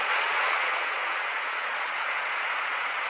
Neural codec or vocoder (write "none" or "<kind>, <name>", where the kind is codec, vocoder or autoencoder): vocoder, Vocos